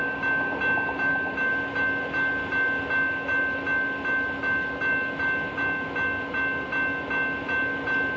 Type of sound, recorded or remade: recorded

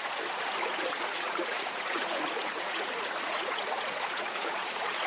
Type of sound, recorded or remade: remade